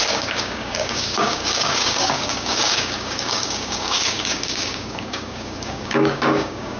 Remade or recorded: remade